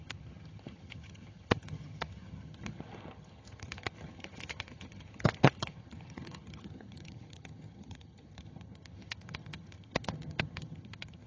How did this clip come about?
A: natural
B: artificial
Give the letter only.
B